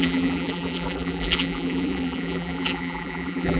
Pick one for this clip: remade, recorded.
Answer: remade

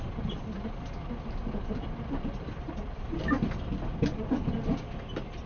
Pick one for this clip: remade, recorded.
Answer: recorded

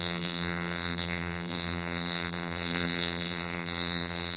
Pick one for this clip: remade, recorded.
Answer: remade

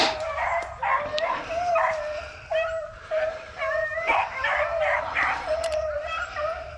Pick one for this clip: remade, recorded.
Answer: remade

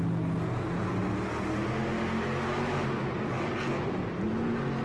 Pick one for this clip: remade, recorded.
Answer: recorded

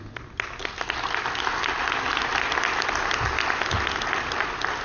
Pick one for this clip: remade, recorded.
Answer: recorded